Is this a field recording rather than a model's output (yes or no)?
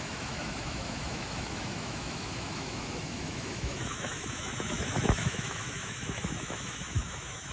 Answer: no